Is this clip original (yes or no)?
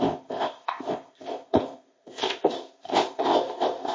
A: no